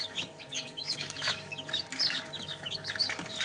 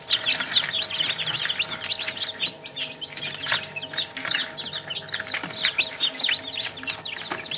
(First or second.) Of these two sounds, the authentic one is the second